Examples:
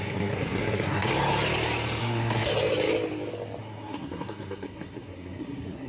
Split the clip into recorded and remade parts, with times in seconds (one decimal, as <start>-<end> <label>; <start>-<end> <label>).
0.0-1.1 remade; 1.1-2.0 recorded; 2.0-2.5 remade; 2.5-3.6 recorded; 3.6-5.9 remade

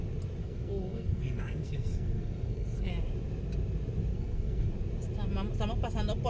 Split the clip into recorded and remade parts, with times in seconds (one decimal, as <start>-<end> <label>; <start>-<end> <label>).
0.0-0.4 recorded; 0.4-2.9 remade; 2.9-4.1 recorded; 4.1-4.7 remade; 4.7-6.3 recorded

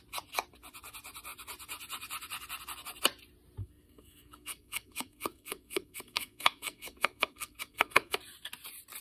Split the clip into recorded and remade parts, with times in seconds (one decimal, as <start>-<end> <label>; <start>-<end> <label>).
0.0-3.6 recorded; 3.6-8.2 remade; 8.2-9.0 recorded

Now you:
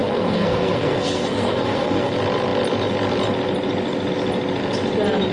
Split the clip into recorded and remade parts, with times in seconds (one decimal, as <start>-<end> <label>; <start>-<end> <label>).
0.0-2.1 remade; 2.1-5.3 recorded